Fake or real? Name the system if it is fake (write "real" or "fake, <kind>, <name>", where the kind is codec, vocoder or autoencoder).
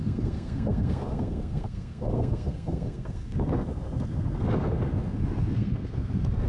fake, codec, SNAC